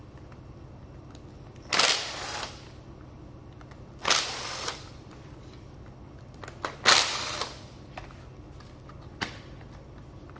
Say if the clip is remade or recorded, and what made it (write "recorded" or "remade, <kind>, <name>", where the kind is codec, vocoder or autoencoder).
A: recorded